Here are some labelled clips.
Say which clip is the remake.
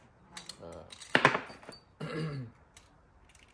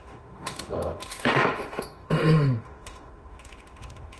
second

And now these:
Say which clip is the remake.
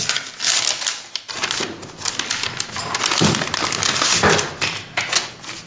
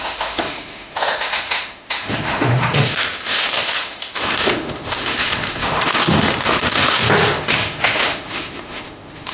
second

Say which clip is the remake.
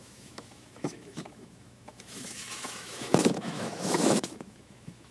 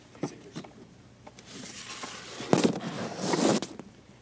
first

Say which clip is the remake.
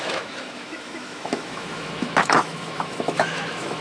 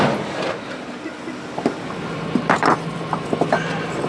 first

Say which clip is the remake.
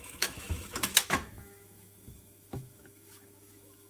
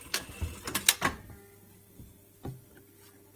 first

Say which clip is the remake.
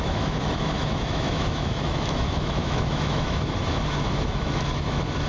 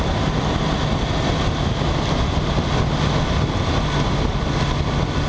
first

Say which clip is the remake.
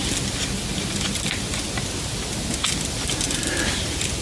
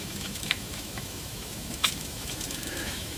second